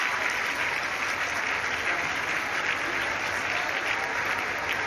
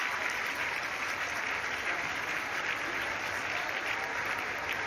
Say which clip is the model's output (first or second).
second